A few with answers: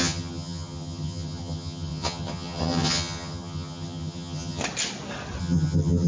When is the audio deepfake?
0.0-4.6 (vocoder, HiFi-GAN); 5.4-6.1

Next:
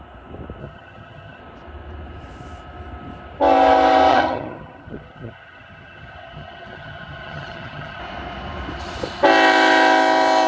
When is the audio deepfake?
0.6-1.4 (vocoder, HiFi-GAN); 4.1-8.0

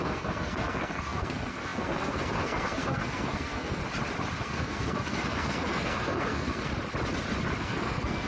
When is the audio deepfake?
0.0-3.8 (codec, SNAC); 4.4-6.7; 7.6-8.3

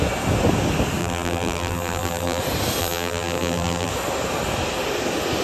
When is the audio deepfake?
1.0-2.4 (vocoder, BigVGAN v2); 2.8-3.9

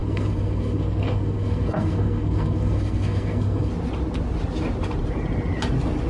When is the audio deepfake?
0.0-3.7 (codec, SNAC)

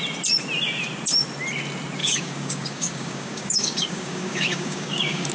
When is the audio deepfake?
2.0-5.3 (codec, DAC)

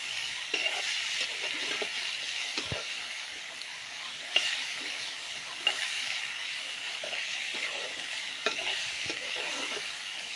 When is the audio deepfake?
0.0-0.6 (codec, DAC); 2.3-10.4

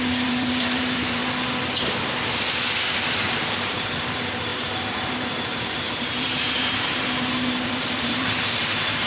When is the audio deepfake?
0.0-1.2 (vocoder, BigVGAN v2); 3.0-9.1